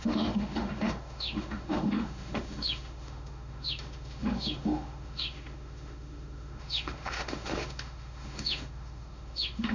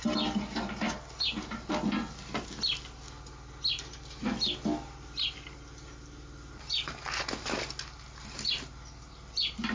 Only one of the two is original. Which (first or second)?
second